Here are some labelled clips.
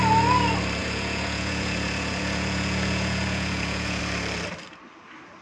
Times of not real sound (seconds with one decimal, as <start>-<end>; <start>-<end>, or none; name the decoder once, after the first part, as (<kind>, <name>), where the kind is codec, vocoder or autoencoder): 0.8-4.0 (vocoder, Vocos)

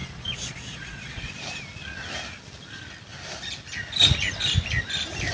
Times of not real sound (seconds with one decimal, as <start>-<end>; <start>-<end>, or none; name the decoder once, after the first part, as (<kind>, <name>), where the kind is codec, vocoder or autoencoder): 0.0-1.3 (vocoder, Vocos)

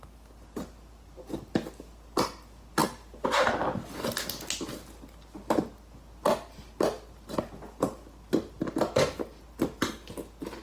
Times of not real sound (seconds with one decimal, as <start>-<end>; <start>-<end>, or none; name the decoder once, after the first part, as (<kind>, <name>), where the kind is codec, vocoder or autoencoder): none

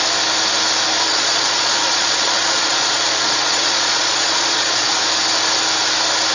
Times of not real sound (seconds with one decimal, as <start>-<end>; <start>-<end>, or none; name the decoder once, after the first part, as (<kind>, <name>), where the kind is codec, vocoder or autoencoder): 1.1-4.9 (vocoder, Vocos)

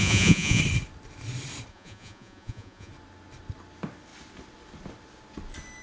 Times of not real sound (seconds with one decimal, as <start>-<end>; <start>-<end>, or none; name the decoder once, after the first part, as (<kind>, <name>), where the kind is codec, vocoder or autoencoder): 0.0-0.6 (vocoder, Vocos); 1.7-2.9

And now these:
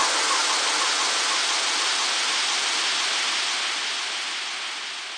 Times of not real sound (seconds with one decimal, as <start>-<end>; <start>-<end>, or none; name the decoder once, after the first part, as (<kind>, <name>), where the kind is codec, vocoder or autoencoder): none

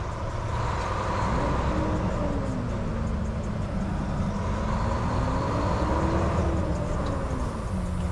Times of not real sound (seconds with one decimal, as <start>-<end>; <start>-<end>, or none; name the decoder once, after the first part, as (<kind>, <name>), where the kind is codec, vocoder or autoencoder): none